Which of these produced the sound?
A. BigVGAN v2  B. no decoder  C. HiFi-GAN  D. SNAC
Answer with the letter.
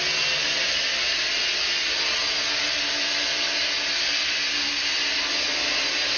B